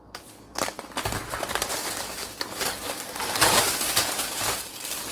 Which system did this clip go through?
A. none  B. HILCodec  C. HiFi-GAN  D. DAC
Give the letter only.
D